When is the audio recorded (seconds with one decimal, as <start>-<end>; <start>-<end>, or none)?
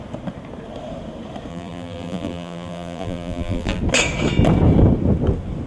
0.0-1.5; 3.8-5.7